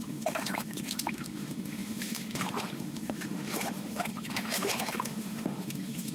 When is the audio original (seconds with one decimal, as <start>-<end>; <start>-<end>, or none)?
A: none